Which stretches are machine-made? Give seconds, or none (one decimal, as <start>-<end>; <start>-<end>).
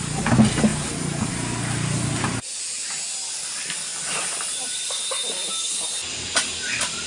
none